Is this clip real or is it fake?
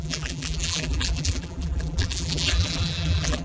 fake